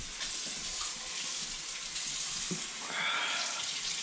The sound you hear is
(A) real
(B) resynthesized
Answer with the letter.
A